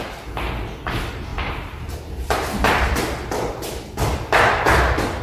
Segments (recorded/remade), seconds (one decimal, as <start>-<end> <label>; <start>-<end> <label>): 0.0-1.3 recorded; 1.3-2.9 remade; 2.9-5.2 recorded